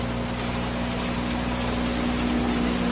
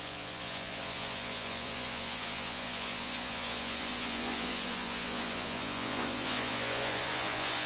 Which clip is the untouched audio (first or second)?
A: first